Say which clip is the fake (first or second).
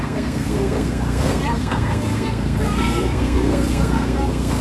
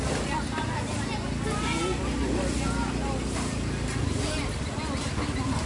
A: first